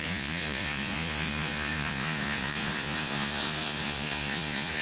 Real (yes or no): no